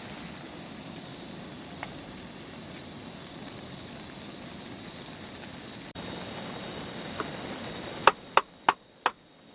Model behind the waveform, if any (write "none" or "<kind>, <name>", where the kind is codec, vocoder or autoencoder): none